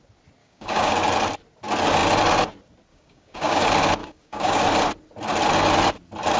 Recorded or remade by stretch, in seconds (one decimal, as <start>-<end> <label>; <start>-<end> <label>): 0.0-0.4 recorded; 0.4-0.9 remade; 0.9-2.9 recorded; 2.9-3.6 remade; 3.6-4.0 recorded; 4.0-4.6 remade; 4.6-6.4 recorded